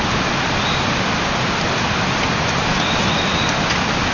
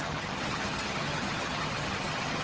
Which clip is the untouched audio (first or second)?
first